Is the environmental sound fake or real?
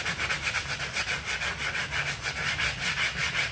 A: real